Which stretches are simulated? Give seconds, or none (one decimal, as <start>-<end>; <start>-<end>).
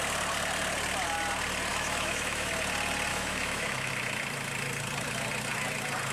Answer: 1.7-2.5; 3.1-3.9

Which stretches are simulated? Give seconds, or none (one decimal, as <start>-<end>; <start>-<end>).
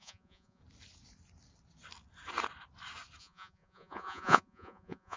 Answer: 0.0-0.6; 3.2-5.2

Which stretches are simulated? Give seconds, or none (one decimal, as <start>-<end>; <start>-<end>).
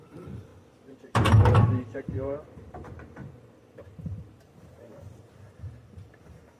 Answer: 0.0-6.6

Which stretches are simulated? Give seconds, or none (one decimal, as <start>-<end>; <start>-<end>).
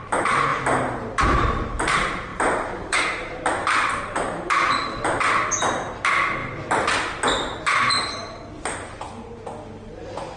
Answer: 2.3-3.0; 3.6-4.8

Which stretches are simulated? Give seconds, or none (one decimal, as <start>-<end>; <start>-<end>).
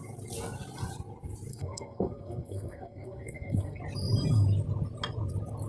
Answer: 1.5-3.8